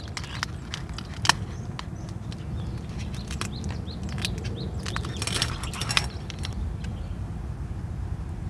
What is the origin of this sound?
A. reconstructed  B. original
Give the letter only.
B